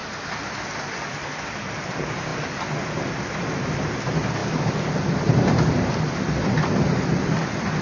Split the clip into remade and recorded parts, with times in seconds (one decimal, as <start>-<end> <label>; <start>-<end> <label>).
0.0-0.7 recorded; 0.7-2.3 remade; 2.3-3.4 recorded; 3.4-7.8 remade